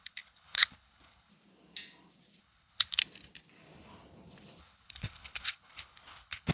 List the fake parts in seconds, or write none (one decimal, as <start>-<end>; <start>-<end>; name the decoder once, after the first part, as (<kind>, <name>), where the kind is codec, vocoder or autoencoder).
0.0-1.3 (codec, HILCodec); 2.4-3.0; 4.6-6.5